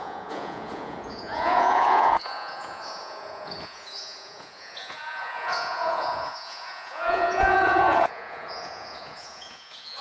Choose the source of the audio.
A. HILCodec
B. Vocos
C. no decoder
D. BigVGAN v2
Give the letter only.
B